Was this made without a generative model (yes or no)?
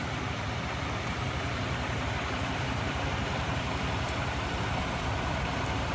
no